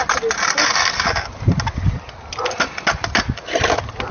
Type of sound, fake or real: real